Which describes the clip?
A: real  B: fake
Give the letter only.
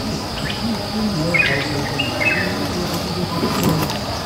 A